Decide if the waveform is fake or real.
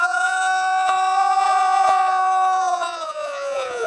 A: fake